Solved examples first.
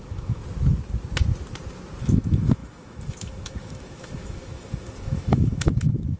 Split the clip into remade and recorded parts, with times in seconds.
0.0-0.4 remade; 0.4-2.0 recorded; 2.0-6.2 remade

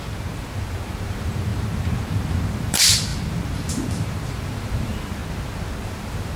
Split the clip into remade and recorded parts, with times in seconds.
0.0-5.2 remade; 5.2-5.8 recorded; 5.8-6.4 remade

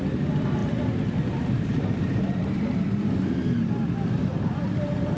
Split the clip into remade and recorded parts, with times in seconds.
0.0-0.6 recorded; 0.6-2.6 remade; 2.6-5.2 recorded

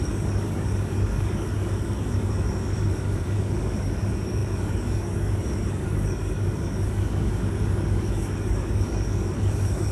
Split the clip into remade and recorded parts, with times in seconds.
0.0-9.9 remade

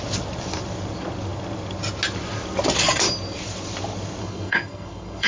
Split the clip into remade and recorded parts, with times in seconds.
0.0-4.2 recorded; 4.2-5.3 remade

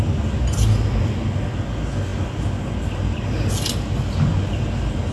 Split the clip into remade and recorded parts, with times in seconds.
0.0-5.1 recorded

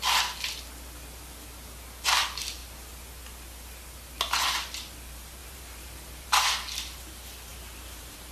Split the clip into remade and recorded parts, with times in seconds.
0.0-5.4 recorded; 5.4-6.4 remade; 6.4-7.5 recorded; 7.5-8.3 remade

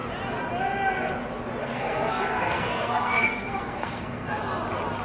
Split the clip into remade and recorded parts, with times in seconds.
0.0-1.6 recorded; 1.6-4.4 remade; 4.4-5.0 recorded